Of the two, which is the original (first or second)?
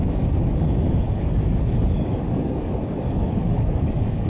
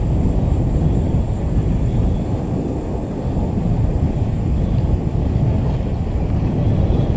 second